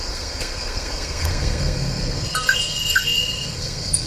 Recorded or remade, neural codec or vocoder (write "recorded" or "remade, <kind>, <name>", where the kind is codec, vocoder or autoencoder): remade, codec, SNAC